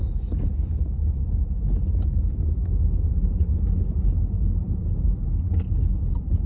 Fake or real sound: real